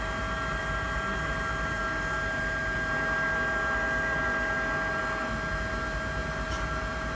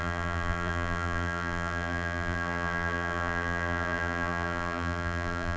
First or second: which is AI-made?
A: second